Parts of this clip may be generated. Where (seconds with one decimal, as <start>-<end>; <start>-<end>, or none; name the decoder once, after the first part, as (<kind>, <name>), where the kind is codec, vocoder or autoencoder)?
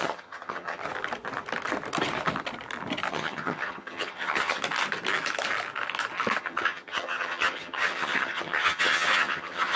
0.0-0.8 (vocoder, HiFi-GAN); 3.1-4.6; 6.4-9.8